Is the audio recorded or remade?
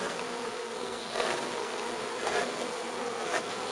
remade